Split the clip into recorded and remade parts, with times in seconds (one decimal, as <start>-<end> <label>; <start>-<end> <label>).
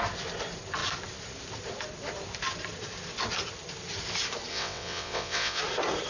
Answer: 0.0-4.5 recorded; 4.5-5.6 remade; 5.6-6.1 recorded